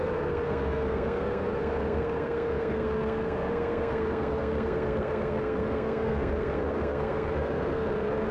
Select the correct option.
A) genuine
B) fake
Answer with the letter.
B